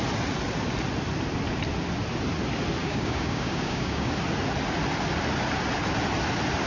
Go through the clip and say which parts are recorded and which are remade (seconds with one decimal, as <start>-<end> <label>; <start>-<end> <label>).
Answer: 0.0-2.8 recorded; 2.8-4.1 remade; 4.1-6.7 recorded